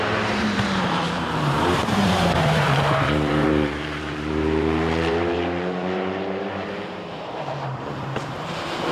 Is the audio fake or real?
fake